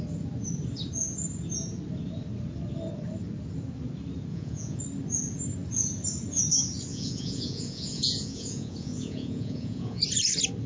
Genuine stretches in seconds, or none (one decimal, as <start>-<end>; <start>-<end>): 0.0-4.3; 4.8-6.9; 10.0-10.7